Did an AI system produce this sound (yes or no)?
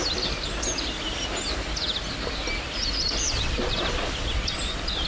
no